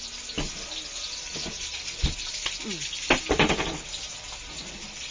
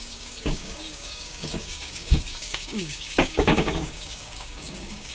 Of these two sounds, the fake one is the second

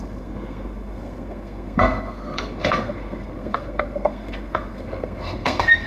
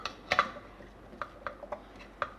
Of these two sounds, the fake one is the first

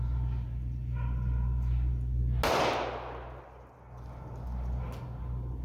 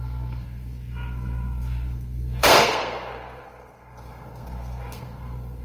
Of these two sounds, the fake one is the second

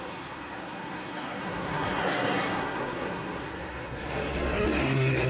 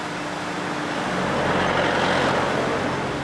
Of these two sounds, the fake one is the first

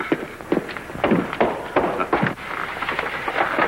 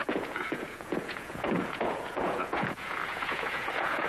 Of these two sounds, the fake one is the second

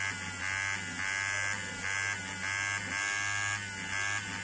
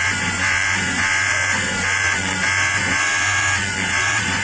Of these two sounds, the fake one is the second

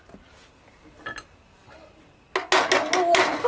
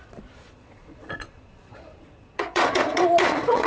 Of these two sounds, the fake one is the second